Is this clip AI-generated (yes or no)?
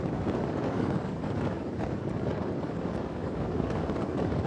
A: yes